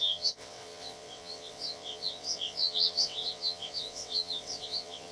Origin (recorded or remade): remade